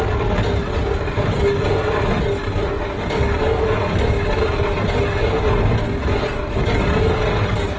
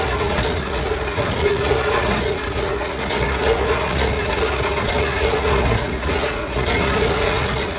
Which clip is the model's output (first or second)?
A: second